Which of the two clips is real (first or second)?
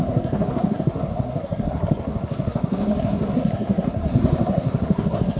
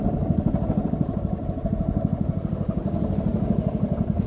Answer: second